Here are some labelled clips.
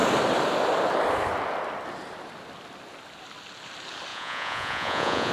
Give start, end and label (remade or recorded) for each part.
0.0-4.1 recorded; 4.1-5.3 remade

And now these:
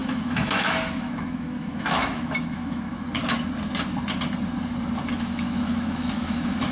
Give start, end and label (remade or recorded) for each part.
0.0-3.2 remade; 3.2-5.2 recorded; 5.2-6.7 remade

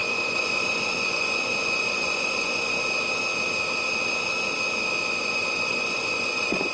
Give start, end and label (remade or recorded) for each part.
0.0-2.8 remade; 2.8-5.2 recorded; 5.2-6.7 remade

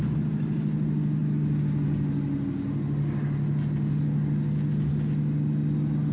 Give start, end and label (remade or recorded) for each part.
0.0-6.1 recorded

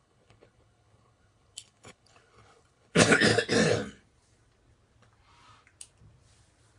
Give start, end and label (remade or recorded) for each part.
0.0-3.3 remade; 3.3-6.8 recorded

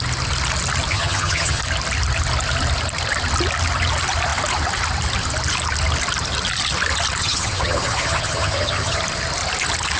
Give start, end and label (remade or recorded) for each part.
0.0-0.9 recorded; 0.9-1.6 remade; 1.6-7.2 recorded; 7.2-9.0 remade; 9.0-10.0 recorded

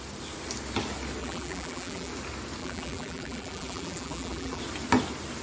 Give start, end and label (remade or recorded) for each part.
0.0-1.2 recorded; 1.2-2.1 remade; 2.1-2.6 recorded; 2.6-4.6 remade; 4.6-5.4 recorded